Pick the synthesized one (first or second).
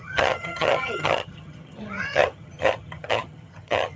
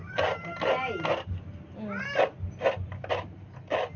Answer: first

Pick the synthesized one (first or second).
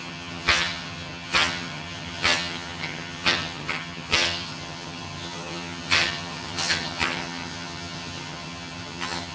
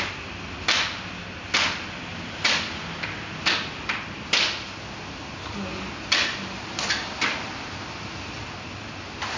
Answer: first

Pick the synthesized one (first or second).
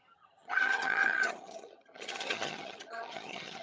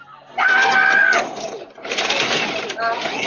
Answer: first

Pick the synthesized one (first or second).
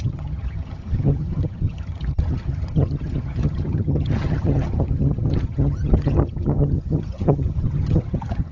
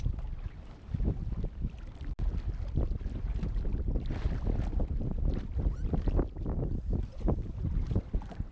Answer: first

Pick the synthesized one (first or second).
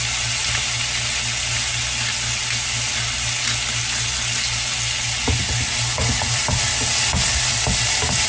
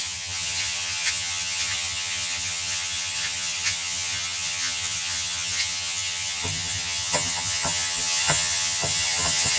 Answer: second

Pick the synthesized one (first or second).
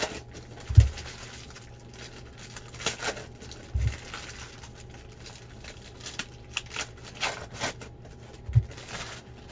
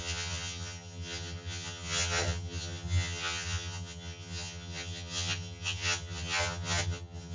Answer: second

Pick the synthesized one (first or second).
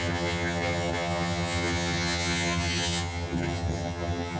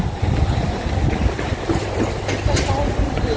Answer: first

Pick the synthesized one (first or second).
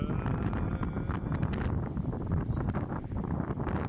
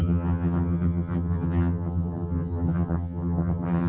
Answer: second